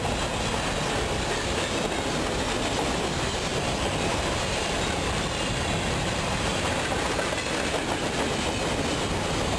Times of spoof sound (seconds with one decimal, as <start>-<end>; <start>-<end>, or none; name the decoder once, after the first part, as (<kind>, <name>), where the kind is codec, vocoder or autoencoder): 3.5-6.6 (vocoder, BigVGAN v2)